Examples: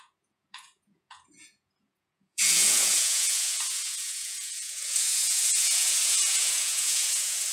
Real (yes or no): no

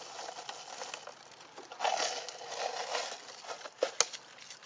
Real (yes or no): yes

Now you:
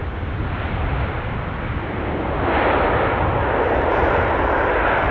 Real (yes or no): yes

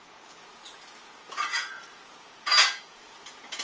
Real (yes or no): no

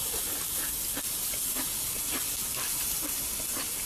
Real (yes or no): yes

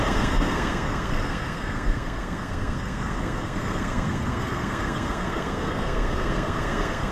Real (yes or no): no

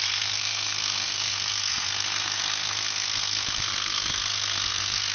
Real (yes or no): no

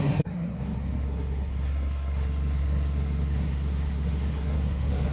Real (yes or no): no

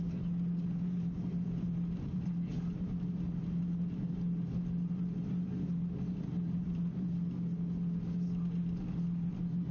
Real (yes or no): yes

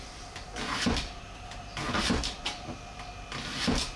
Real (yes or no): yes